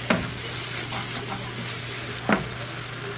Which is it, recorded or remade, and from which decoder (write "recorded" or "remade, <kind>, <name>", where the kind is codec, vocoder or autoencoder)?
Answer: recorded